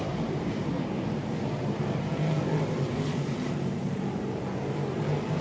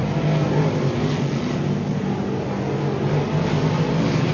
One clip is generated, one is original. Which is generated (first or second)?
first